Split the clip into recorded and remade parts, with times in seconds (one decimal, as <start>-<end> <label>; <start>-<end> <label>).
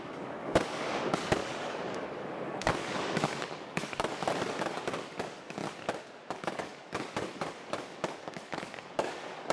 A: 0.0-5.6 remade; 5.6-6.3 recorded; 6.3-9.5 remade